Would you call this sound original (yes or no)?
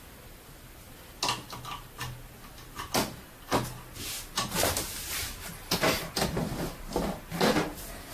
yes